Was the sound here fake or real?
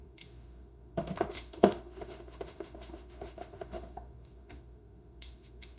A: fake